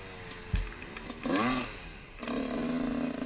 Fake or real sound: real